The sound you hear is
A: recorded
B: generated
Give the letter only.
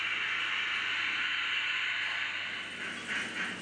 A